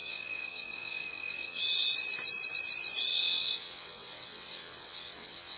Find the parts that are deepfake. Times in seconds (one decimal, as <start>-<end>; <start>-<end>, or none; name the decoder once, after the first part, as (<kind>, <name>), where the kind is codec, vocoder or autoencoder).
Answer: 0.0-1.6 (vocoder, WaveNeXt); 3.1-5.6